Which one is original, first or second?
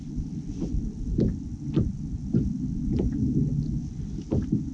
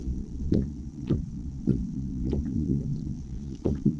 first